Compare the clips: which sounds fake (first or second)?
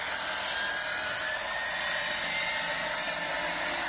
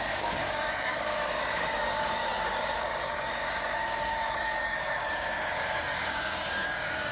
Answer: second